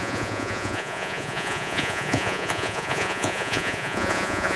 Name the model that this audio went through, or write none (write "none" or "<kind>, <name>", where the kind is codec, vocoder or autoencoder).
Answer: vocoder, Vocos